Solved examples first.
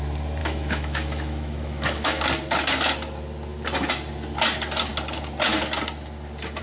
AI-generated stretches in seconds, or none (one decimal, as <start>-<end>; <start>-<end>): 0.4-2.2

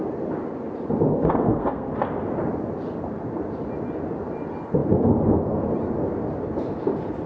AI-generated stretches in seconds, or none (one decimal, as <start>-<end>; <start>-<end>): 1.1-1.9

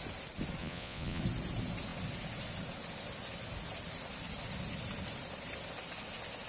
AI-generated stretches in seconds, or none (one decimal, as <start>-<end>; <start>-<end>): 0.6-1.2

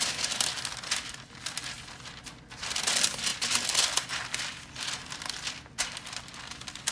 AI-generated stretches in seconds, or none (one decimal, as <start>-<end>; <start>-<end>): none

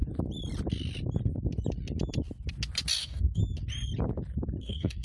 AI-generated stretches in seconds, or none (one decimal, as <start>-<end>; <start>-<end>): 3.0-3.4; 4.6-5.0